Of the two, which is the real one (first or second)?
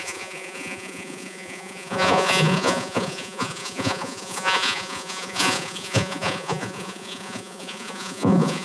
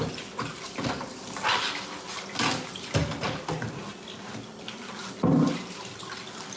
second